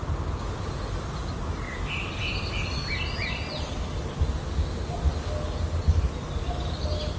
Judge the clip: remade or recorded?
recorded